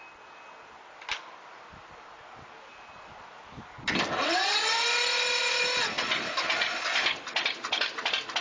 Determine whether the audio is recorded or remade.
recorded